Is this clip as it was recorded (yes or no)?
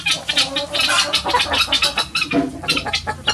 yes